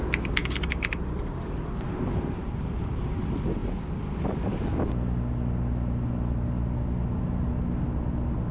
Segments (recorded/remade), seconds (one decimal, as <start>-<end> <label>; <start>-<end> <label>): 0.0-0.4 recorded; 0.4-3.0 remade; 3.0-8.5 recorded